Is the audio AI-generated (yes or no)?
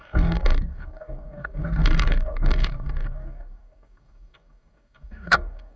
yes